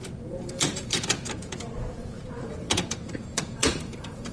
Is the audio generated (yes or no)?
yes